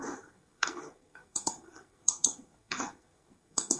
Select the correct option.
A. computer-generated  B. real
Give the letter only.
A